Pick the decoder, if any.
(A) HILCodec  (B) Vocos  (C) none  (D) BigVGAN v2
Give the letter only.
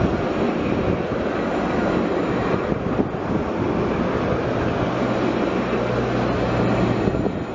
C